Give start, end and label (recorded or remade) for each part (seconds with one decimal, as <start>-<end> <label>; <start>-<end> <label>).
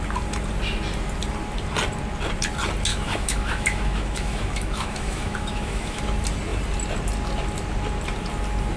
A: 0.0-2.9 recorded; 2.9-6.0 remade; 6.0-8.8 recorded